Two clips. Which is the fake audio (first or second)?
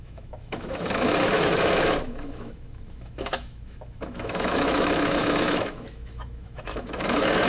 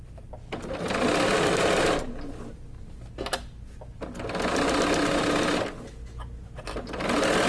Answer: first